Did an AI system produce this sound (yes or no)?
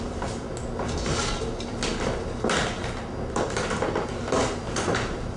no